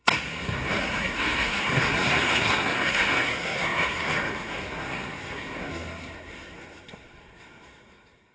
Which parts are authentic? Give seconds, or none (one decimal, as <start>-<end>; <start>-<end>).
none

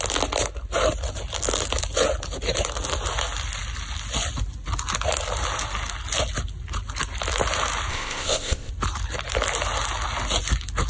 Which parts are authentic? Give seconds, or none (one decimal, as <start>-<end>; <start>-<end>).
0.0-7.9; 8.7-10.9

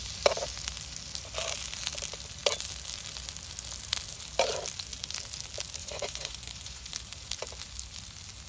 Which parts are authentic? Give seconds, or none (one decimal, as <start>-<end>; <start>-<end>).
0.0-5.8; 6.9-8.5

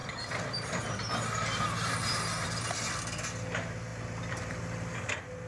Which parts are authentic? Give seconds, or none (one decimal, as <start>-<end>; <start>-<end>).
0.8-3.9; 4.4-5.5

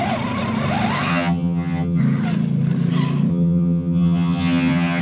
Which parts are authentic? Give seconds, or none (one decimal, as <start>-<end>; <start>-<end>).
0.0-1.1; 2.0-3.3

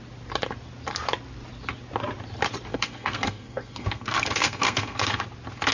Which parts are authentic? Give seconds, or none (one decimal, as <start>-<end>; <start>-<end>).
0.0-2.7; 5.2-5.7